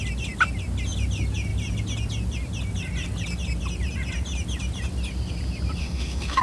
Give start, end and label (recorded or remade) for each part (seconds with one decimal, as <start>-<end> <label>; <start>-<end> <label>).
0.0-5.8 recorded; 5.8-6.4 remade